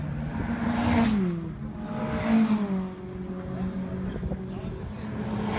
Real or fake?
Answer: real